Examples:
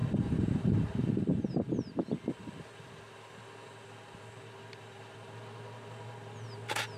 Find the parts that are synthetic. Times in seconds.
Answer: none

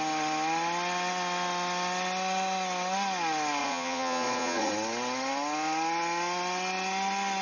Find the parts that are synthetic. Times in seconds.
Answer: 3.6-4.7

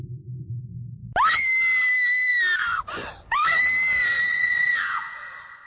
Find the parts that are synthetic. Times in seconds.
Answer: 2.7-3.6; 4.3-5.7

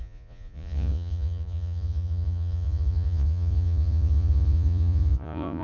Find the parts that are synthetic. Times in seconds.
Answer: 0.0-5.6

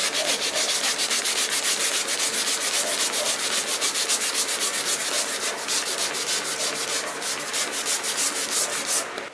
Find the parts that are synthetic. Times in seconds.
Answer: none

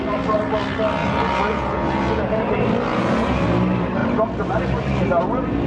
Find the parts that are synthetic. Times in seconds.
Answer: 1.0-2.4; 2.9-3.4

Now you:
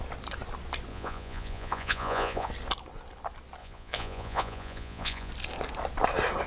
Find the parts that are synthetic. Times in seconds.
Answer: 0.9-2.5; 3.6-5.3

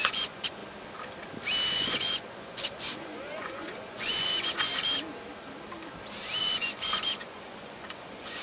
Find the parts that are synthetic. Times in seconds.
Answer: 0.0-0.6; 1.7-4.7; 6.4-8.4